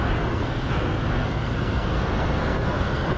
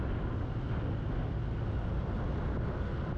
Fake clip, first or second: first